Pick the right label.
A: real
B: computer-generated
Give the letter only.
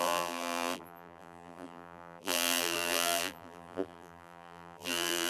B